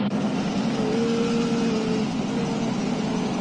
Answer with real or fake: real